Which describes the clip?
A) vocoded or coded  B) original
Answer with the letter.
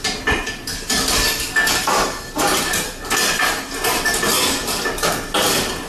B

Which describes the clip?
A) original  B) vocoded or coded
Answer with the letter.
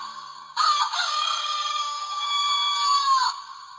B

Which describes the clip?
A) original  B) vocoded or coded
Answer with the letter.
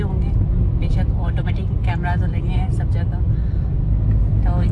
A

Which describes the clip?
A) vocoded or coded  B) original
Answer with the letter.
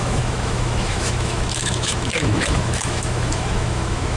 A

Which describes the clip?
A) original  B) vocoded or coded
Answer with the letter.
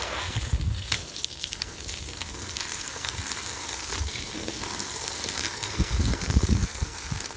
B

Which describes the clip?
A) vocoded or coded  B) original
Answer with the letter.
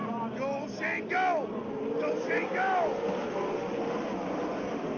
B